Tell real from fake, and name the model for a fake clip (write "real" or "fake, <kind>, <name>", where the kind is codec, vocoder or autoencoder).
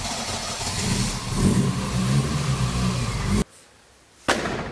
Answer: real